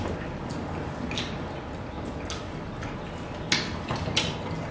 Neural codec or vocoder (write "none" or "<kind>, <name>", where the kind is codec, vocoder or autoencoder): none